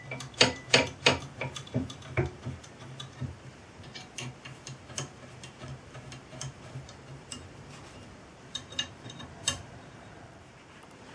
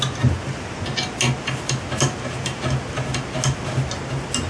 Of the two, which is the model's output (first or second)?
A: first